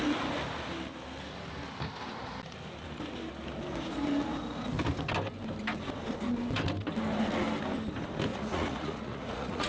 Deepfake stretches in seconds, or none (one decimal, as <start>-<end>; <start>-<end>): 8.3-9.7